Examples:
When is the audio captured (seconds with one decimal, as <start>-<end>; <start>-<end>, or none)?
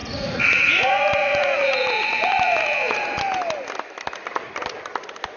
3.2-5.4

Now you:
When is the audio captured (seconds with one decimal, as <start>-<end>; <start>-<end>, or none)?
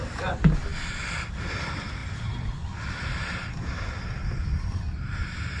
0.0-5.6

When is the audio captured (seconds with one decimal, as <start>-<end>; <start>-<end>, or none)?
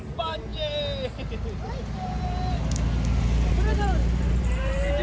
0.5-3.5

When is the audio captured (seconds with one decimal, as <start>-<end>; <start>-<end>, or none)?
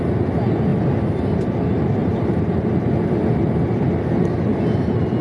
0.0-0.7; 1.2-2.0; 2.6-4.5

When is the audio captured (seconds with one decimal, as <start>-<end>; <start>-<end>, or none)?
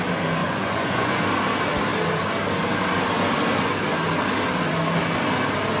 0.0-0.4; 1.2-5.8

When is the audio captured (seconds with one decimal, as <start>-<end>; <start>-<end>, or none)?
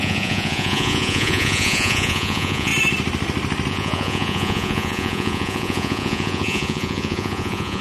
2.7-3.7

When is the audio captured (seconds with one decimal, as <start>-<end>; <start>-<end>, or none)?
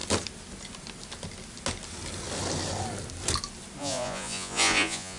0.0-3.8